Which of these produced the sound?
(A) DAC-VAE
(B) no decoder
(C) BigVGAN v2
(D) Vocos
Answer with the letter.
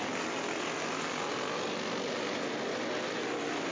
B